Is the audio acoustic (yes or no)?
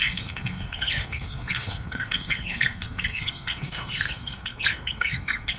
no